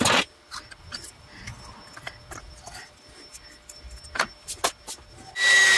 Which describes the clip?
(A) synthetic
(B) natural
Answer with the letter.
B